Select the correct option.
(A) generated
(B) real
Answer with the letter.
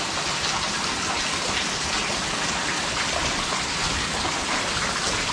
B